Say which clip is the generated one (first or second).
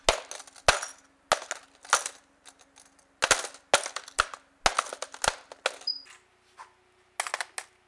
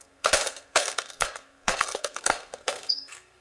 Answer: second